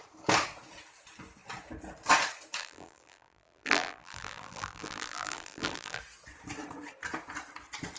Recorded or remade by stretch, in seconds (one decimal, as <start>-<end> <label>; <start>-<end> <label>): 0.0-2.6 recorded; 2.6-6.0 remade; 6.0-8.0 recorded